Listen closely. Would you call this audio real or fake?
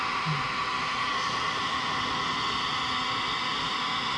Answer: real